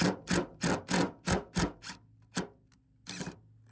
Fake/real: real